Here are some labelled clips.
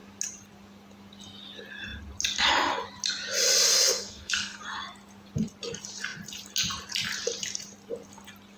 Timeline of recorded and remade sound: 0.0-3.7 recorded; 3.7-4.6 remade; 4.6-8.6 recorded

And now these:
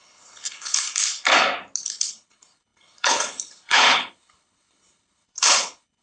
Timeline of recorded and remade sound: 0.0-1.3 remade; 1.3-1.8 recorded; 1.8-6.0 remade

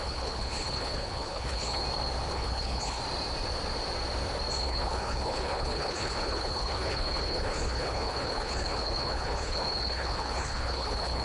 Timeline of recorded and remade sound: 0.0-1.8 remade; 1.8-2.3 recorded; 2.3-3.0 remade; 3.0-4.6 recorded; 4.6-11.2 remade

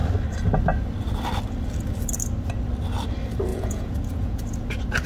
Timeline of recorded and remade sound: 0.0-3.5 recorded; 3.5-4.6 remade; 4.6-5.1 recorded

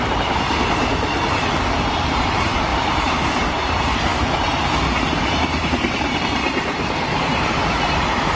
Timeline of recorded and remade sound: 0.0-4.1 remade; 4.1-5.7 recorded; 5.7-8.4 remade

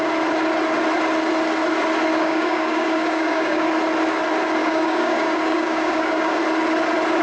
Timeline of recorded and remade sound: 0.0-2.1 recorded; 2.1-3.7 remade; 3.7-4.6 recorded; 4.6-6.4 remade; 6.4-7.2 recorded

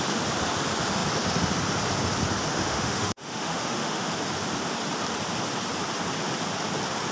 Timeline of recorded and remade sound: 0.0-2.5 recorded; 2.5-4.1 remade; 4.1-7.1 recorded